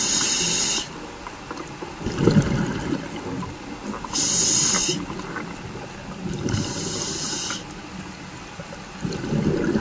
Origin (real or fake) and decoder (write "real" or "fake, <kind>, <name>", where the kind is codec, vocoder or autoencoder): real